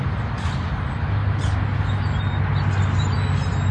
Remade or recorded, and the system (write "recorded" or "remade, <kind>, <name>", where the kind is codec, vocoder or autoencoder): recorded